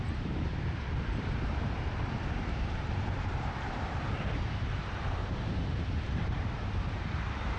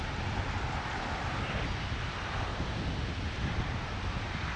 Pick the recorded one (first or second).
second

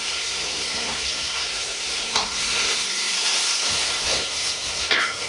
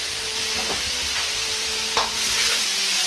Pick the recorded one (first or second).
second